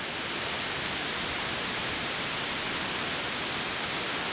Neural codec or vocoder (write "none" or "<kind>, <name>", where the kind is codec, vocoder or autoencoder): none